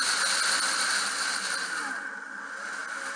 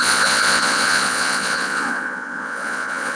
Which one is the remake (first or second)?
second